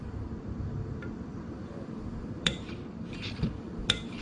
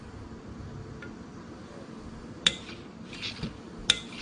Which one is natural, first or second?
second